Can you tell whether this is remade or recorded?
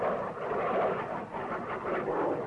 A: recorded